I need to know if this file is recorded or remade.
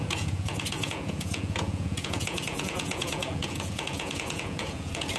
remade